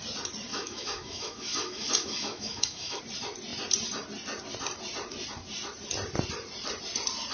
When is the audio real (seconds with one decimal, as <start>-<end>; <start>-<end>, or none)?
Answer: 0.0-0.5; 3.0-7.3